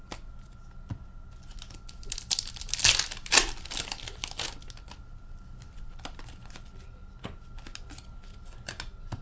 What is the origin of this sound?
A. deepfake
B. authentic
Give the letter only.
B